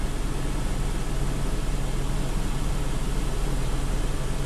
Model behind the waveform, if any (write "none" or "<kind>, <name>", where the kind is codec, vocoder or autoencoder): none